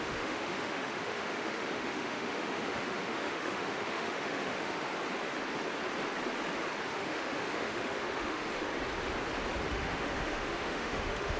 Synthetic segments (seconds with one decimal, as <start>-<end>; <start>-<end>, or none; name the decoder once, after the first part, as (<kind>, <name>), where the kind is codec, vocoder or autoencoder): 0.0-4.9 (autoencoder, DAC-VAE); 6.8-8.7; 9.7-11.4